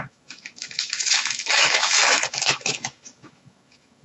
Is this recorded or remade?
remade